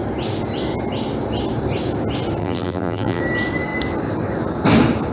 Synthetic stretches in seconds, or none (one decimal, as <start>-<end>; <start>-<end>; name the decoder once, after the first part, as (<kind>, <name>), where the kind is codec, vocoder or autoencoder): 2.4-3.2 (vocoder, BigVGAN v2)